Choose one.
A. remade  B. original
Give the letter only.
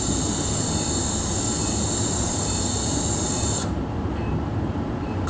A